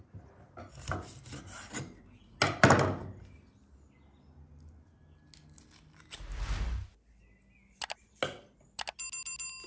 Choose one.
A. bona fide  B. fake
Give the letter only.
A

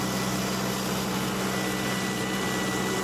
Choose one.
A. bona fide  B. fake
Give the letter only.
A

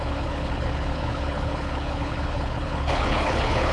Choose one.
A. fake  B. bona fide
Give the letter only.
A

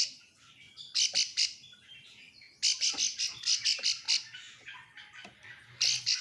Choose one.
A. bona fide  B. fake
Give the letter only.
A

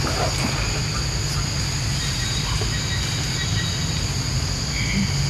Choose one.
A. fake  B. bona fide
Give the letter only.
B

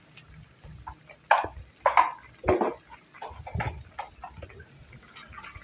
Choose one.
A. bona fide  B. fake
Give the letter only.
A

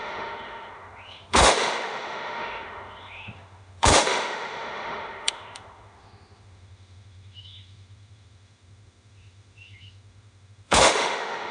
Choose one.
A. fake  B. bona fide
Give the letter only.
A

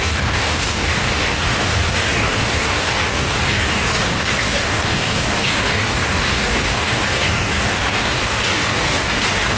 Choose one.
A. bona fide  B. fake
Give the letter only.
B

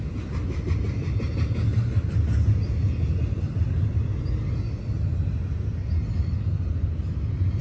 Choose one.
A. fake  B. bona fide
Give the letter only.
B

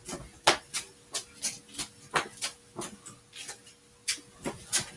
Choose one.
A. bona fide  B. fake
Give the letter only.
A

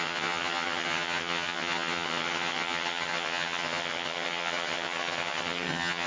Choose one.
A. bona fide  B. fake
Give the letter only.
B